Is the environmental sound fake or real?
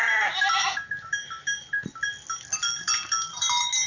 real